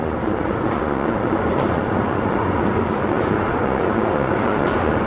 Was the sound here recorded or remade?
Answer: remade